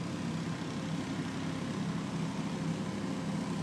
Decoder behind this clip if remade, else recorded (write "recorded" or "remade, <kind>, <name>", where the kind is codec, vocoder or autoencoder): recorded